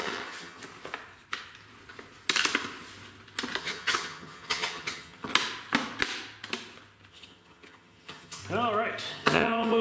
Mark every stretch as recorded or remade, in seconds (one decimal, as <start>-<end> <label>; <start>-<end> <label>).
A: 0.0-0.6 remade; 0.6-3.6 recorded; 3.6-5.3 remade; 5.3-7.1 recorded; 7.1-8.4 remade; 8.4-9.1 recorded; 9.1-9.8 remade